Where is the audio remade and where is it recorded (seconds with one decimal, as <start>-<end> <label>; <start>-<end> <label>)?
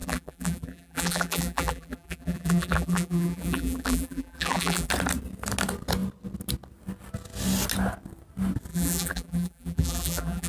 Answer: 0.0-4.9 remade; 4.9-8.7 recorded; 8.7-10.5 remade